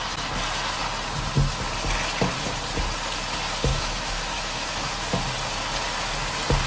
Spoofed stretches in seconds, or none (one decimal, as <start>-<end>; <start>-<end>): 3.7-4.9